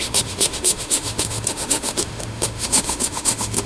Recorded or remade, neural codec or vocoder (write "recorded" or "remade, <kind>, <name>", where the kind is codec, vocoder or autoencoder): remade, autoencoder, DAC-VAE